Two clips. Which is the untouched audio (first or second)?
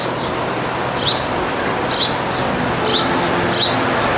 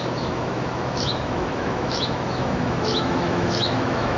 first